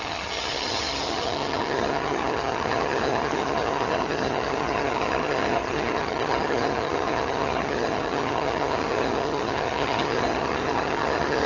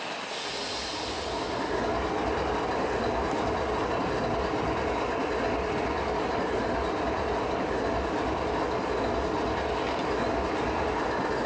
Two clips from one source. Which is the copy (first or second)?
first